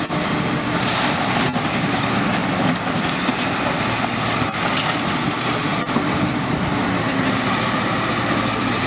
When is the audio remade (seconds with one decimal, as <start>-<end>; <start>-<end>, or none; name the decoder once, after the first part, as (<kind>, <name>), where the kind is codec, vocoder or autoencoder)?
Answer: none